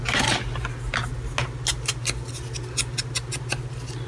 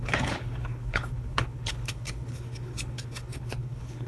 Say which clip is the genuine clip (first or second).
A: first